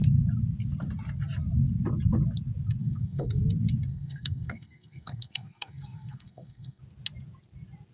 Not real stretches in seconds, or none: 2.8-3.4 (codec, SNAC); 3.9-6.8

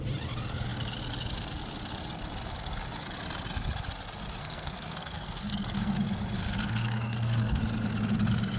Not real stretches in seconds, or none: 4.4-6.0 (codec, SNAC); 6.4-7.6